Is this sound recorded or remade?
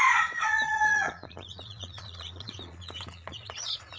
remade